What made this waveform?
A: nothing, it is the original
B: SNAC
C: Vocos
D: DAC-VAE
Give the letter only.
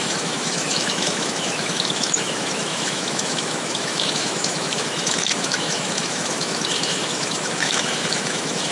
D